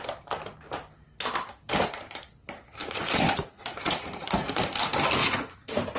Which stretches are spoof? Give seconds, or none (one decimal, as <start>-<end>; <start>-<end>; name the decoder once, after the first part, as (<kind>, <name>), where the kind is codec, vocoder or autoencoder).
2.8-4.6 (vocoder, Vocos); 5.2-6.0